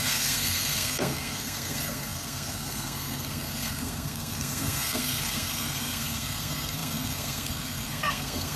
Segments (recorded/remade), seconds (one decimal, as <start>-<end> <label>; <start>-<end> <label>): 0.0-8.6 remade